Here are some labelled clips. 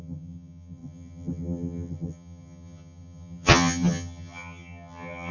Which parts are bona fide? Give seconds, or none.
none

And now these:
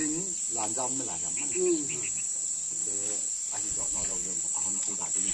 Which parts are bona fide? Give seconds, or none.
0.0-5.3

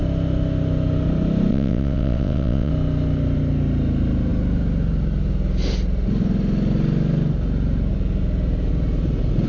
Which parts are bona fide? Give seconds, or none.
0.0-1.5; 2.7-9.5

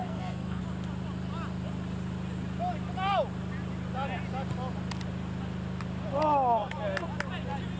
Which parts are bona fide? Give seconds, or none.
0.6-7.8

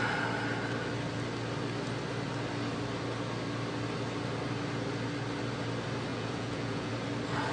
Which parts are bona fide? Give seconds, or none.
0.0-6.1; 6.9-7.5

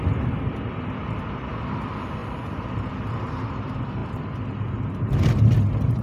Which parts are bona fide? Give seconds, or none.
0.0-2.2; 2.9-6.0

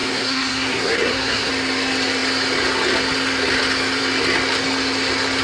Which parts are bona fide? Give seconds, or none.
1.5-5.4